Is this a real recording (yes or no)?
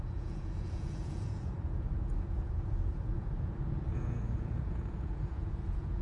no